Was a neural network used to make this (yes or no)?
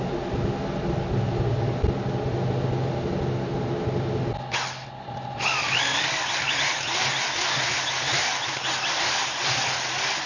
no